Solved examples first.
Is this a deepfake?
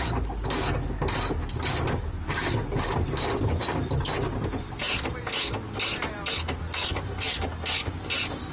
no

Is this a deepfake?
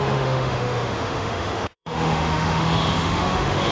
yes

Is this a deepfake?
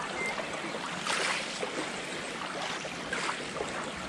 no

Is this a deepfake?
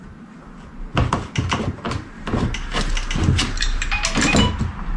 no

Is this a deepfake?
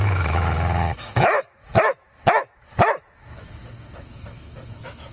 yes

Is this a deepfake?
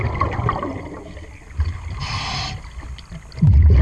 no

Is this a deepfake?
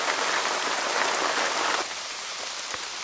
no